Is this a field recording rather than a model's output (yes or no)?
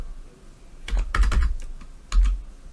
yes